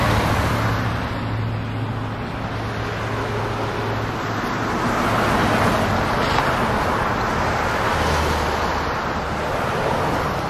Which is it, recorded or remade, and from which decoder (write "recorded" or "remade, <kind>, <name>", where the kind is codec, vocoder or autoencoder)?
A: recorded